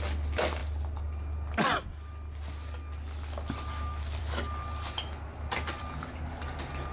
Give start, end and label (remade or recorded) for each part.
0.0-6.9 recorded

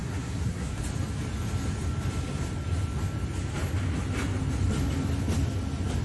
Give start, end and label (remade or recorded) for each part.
0.0-0.8 remade; 0.8-6.0 recorded

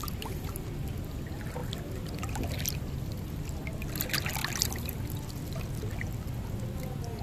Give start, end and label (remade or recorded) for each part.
0.0-1.6 recorded; 1.6-3.4 remade; 3.4-7.2 recorded